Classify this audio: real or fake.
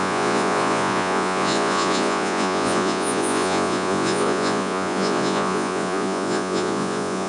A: fake